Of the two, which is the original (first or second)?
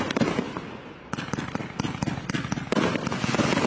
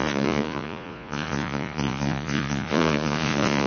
first